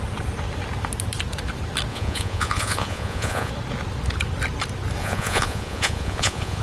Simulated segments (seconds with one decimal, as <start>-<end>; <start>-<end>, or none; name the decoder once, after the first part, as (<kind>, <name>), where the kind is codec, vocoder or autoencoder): 1.9-3.5 (vocoder, Vocos); 5.0-6.6